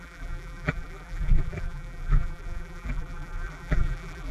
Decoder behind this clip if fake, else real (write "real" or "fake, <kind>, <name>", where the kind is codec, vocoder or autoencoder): fake, vocoder, BigVGAN v2